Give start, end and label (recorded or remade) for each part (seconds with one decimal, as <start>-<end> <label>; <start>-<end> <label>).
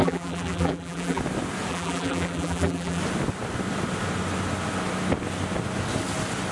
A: 0.0-1.2 remade; 1.2-1.7 recorded; 1.7-3.0 remade; 3.0-6.5 recorded